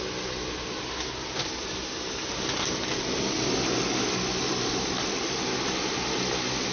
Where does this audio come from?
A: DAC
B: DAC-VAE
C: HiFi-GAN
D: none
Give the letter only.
D